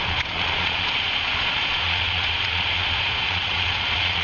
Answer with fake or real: fake